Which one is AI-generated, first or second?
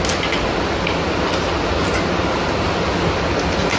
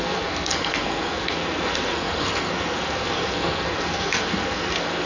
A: second